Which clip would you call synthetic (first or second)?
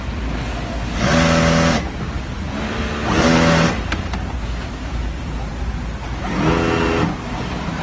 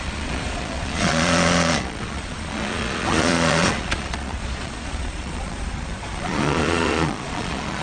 second